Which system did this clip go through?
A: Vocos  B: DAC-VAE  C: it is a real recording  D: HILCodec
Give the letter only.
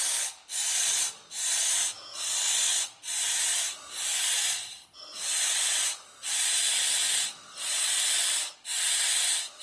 C